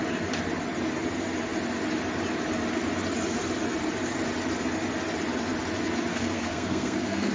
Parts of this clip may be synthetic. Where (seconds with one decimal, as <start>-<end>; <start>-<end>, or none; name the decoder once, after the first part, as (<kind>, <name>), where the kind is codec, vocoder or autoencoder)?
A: 6.1-7.3 (codec, SNAC)